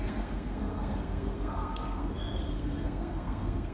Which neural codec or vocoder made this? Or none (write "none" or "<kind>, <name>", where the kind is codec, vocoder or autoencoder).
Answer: codec, SNAC